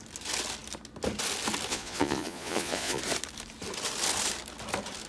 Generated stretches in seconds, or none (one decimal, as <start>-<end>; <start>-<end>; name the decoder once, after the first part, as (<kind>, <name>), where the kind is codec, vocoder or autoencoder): 1.7-3.0 (vocoder, Vocos)